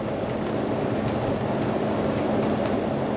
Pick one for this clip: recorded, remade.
recorded